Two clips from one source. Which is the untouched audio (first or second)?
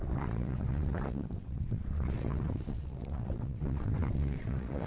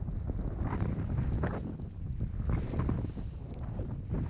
second